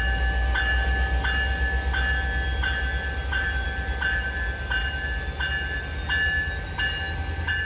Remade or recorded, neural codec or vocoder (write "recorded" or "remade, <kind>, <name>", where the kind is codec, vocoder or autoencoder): recorded